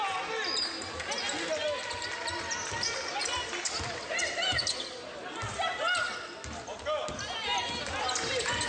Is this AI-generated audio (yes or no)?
no